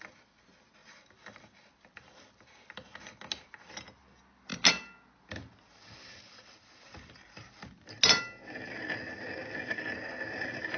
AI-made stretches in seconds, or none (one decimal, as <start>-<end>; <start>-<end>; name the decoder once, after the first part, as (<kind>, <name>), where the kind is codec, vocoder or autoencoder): none